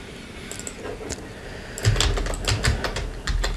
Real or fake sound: real